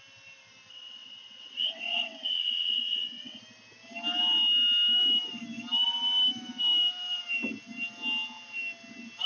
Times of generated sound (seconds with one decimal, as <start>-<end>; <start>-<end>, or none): 0.7-3.4